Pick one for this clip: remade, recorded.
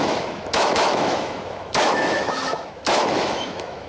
remade